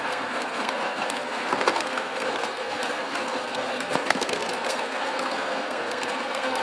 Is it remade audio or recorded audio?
remade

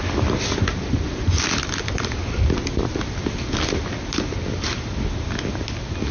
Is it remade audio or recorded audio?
recorded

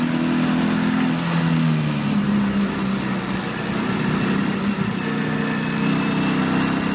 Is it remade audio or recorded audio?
recorded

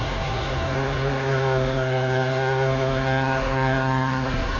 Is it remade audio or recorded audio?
remade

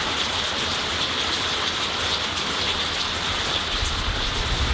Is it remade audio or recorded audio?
recorded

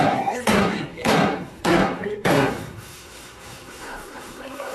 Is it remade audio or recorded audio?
remade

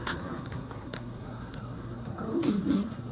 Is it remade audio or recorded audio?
remade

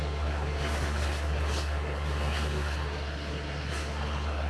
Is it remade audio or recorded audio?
remade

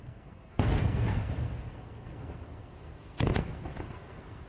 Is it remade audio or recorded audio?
remade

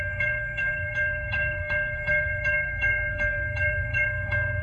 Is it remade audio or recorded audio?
remade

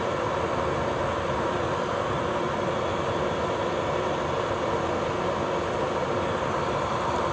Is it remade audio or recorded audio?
recorded